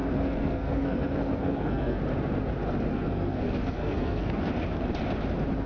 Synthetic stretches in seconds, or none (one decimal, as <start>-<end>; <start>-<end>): 0.0-2.0; 2.9-4.5